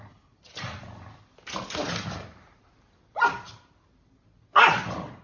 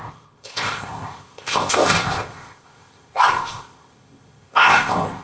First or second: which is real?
first